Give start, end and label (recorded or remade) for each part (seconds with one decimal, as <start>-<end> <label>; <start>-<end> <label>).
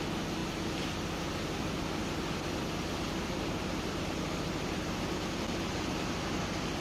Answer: 0.0-6.8 recorded